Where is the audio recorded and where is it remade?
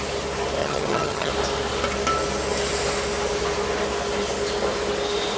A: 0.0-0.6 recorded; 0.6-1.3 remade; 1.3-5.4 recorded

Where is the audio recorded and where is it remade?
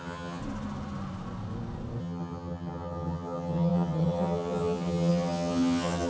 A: 0.0-0.4 remade; 0.4-2.0 recorded; 2.0-6.1 remade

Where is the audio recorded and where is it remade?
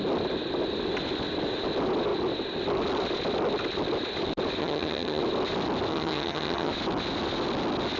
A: 0.0-4.6 recorded; 4.6-5.2 remade; 5.2-5.9 recorded; 5.9-6.7 remade; 6.7-8.0 recorded